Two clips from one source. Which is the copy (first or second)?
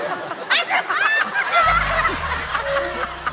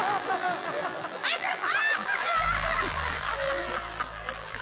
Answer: second